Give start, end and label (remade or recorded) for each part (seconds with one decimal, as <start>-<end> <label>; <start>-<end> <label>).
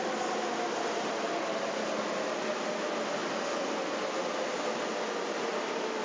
0.0-6.0 recorded